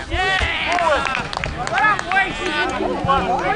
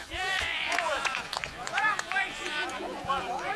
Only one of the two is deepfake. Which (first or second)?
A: second